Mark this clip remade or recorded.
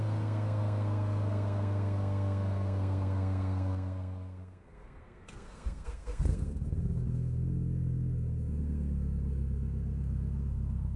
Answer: remade